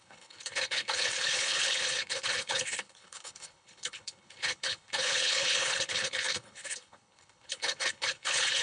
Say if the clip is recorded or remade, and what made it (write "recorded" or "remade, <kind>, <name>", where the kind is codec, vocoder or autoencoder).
remade, codec, HILCodec